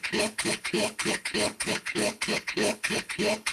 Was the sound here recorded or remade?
remade